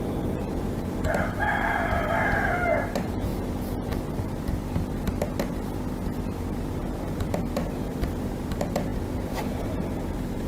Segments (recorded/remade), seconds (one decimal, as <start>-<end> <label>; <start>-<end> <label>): 0.0-3.3 remade; 3.3-4.1 recorded; 4.1-4.6 remade; 4.6-6.7 recorded; 6.7-10.5 remade